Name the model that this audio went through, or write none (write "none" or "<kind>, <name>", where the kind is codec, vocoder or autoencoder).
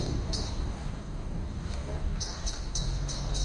codec, DAC